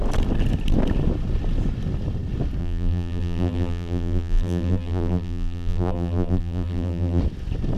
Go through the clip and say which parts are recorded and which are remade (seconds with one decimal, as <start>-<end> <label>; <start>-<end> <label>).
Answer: 0.0-2.6 recorded; 2.6-7.2 remade; 7.2-7.8 recorded

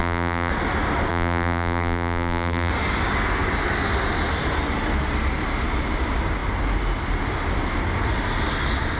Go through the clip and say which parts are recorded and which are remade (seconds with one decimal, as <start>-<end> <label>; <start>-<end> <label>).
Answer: 0.0-0.5 remade; 0.5-1.1 recorded; 1.1-2.7 remade; 2.7-9.0 recorded

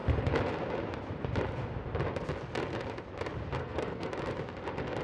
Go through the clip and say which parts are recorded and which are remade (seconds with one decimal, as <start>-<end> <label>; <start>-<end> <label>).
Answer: 0.0-3.6 recorded; 3.6-4.1 remade; 4.1-5.0 recorded

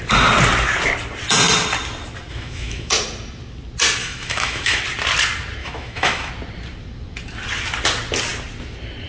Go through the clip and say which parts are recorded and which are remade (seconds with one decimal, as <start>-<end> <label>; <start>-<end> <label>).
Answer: 0.0-2.3 recorded; 2.3-2.9 remade; 2.9-4.0 recorded; 4.0-4.8 remade; 4.8-5.6 recorded; 5.6-6.3 remade; 6.3-9.1 recorded

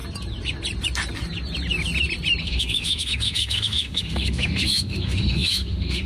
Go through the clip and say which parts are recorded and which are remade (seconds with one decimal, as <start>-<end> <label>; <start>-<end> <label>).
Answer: 0.0-2.4 recorded; 2.4-6.1 remade